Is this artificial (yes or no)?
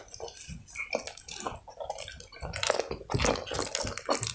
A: no